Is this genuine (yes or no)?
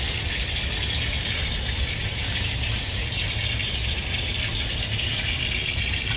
yes